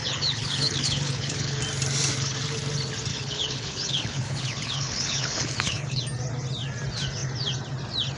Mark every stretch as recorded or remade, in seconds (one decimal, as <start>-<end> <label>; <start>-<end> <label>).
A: 0.0-1.6 remade; 1.6-3.1 recorded; 3.1-6.0 remade; 6.0-8.2 recorded

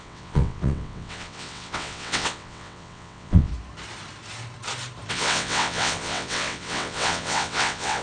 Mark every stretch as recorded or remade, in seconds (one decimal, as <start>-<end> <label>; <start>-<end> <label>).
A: 0.0-3.5 remade; 3.5-5.1 recorded; 5.1-8.0 remade